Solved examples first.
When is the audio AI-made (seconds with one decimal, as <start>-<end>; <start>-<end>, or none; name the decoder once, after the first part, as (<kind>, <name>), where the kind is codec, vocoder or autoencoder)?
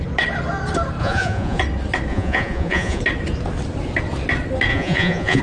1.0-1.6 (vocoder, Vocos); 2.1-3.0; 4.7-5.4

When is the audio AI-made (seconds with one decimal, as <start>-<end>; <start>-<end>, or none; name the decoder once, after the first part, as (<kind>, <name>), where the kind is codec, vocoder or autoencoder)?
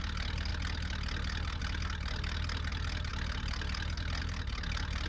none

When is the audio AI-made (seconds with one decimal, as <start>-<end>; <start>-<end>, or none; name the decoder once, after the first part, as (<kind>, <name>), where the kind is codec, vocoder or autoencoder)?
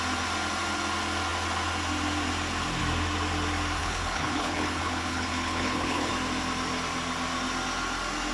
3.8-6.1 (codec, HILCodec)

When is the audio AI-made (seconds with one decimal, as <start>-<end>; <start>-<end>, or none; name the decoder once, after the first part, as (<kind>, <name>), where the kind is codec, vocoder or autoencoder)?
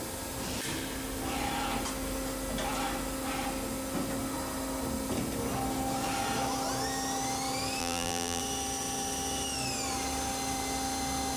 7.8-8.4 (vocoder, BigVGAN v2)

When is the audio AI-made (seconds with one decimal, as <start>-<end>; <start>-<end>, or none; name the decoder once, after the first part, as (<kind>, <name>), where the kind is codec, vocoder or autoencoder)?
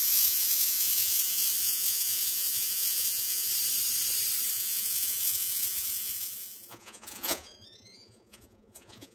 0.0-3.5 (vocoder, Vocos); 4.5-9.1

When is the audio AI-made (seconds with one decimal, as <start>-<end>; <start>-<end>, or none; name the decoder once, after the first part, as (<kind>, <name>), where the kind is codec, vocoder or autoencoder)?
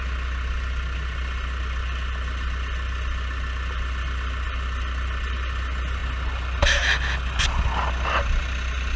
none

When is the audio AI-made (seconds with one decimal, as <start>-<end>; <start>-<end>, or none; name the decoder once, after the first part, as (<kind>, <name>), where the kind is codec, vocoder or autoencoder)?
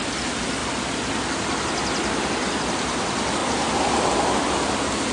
0.6-1.1 (vocoder, BigVGAN v2); 3.4-4.1